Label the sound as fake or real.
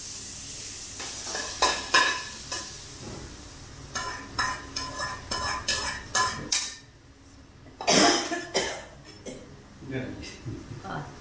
real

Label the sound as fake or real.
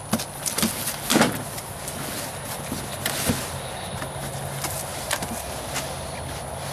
real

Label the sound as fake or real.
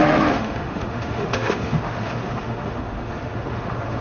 fake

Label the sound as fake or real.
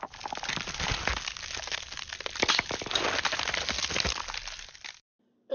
real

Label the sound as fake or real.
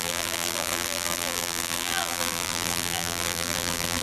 fake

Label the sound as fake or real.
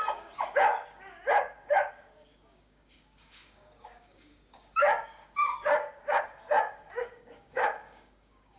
fake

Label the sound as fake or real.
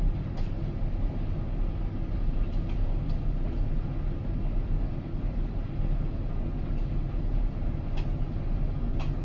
real